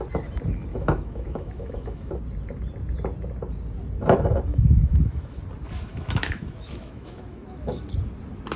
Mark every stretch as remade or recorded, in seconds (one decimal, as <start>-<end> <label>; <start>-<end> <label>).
0.0-0.7 recorded; 0.7-2.1 remade; 2.1-4.5 recorded; 4.5-5.4 remade; 5.4-5.9 recorded; 5.9-7.8 remade; 7.8-8.6 recorded